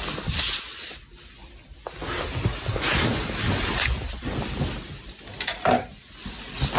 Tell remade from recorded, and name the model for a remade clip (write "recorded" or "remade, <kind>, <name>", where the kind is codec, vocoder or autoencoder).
recorded